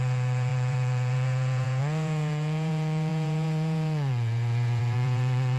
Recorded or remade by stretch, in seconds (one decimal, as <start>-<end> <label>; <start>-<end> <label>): 0.0-5.6 remade